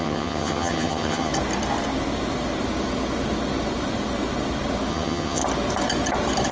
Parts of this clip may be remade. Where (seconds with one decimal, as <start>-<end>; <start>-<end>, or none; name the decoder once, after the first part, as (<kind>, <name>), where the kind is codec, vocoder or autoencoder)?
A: 0.0-1.3 (vocoder, HiFi-GAN); 4.9-5.4

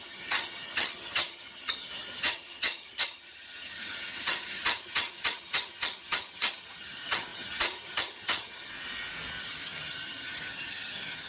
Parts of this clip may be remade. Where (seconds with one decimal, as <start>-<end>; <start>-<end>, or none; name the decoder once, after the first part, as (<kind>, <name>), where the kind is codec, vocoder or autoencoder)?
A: 0.0-8.7 (vocoder, HiFi-GAN); 9.4-11.3

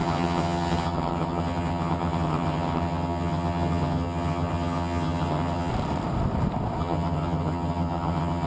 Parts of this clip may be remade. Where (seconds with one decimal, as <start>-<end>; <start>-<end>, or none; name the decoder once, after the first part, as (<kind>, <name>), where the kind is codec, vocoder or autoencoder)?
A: 0.0-5.7 (vocoder, HiFi-GAN); 6.8-8.5

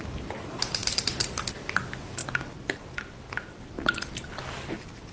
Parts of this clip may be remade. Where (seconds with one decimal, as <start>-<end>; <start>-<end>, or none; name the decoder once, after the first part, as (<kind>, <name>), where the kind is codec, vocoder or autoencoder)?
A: none

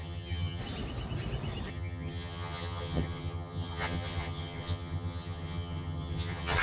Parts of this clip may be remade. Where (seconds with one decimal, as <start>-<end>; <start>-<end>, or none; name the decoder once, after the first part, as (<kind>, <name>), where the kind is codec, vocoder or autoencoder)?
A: 0.0-0.6 (vocoder, HiFi-GAN); 1.7-6.6

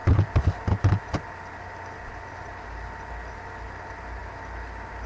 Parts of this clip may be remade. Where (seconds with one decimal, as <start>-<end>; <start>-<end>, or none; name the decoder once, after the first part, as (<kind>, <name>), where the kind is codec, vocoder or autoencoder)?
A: none

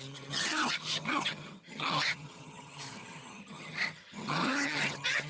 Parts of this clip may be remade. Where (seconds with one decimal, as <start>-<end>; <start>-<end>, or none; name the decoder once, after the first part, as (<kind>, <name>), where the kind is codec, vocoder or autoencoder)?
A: 0.0-5.3 (vocoder, HiFi-GAN)